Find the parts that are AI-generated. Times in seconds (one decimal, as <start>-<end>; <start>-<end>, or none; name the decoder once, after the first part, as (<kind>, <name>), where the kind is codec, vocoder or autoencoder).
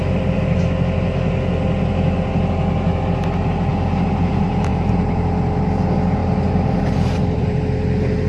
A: 4.7-5.2 (vocoder, BigVGAN v2); 6.2-7.6